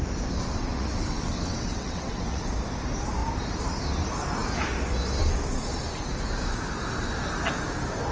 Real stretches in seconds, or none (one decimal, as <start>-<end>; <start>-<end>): 0.0-0.4; 2.5-8.1